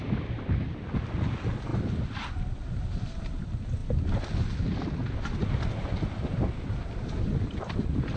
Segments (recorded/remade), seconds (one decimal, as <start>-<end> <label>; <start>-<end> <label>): 0.0-8.2 recorded